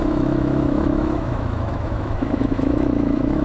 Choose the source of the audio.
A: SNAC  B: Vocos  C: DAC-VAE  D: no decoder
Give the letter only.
C